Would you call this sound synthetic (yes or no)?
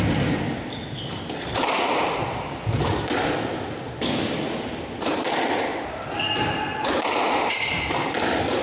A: no